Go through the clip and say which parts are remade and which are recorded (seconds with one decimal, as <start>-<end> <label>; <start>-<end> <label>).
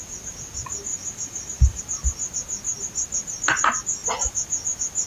0.0-0.9 recorded; 0.9-1.8 remade; 1.8-5.1 recorded